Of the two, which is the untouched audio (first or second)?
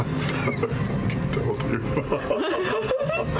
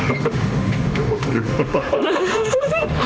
first